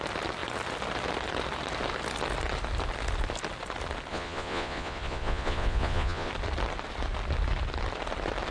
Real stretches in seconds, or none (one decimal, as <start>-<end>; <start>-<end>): 0.0-4.1; 6.3-8.5